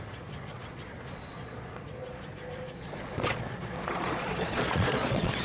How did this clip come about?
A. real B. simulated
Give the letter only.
B